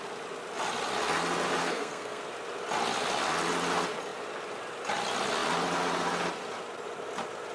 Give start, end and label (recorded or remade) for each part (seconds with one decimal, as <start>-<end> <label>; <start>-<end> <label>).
0.0-1.6 recorded; 1.6-2.2 remade; 2.2-7.5 recorded